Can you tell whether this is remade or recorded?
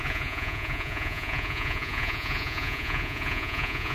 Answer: remade